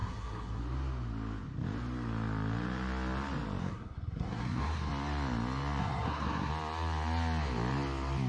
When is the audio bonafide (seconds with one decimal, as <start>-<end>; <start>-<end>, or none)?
0.6-3.6; 4.9-5.8; 6.5-8.3